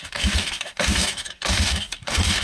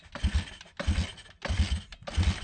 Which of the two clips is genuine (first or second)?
second